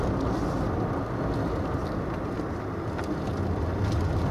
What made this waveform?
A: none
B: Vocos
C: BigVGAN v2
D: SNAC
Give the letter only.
A